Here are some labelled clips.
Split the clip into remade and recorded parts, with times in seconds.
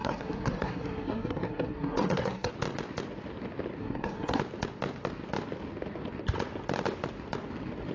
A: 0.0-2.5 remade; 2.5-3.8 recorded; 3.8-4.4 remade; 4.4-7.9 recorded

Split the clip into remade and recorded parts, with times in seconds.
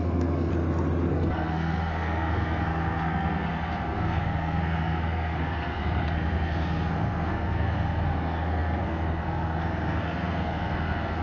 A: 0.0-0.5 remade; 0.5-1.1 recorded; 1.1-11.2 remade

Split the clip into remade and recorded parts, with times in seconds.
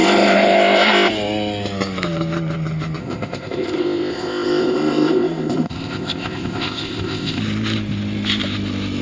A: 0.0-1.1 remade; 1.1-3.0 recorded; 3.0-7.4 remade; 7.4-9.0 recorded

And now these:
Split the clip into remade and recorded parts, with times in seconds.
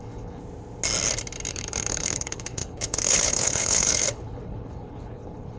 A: 0.0-0.4 remade; 0.4-1.5 recorded; 1.5-5.6 remade